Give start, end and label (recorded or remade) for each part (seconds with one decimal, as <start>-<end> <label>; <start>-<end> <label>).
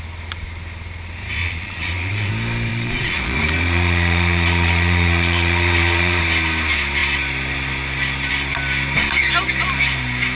0.0-1.4 recorded; 1.4-2.3 remade; 2.3-2.7 recorded; 2.7-6.2 remade; 6.2-10.3 recorded